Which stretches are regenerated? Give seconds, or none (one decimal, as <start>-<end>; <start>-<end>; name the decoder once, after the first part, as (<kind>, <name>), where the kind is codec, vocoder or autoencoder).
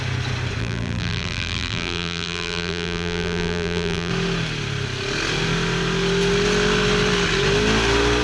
0.6-4.1 (vocoder, BigVGAN v2)